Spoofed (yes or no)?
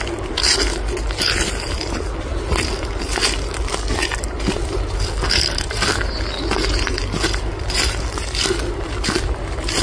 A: no